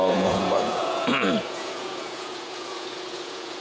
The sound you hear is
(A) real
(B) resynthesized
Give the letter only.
B